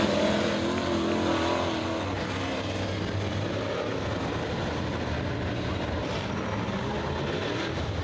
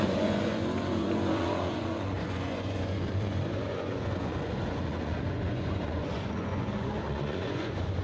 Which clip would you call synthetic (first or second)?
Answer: second